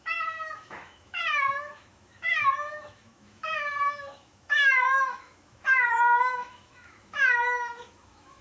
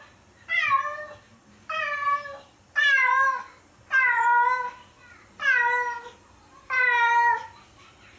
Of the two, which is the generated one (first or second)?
first